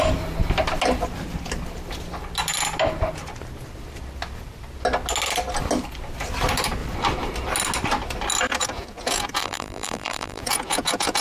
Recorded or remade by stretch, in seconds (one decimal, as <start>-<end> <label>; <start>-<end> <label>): 0.0-9.4 recorded; 9.4-10.4 remade; 10.4-11.2 recorded